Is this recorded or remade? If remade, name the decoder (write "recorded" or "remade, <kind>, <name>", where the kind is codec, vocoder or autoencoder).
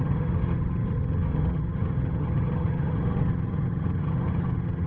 remade, vocoder, HiFi-GAN